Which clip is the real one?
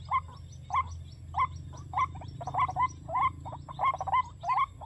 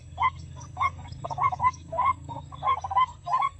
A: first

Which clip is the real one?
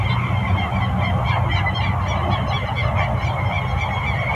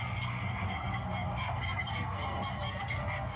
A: first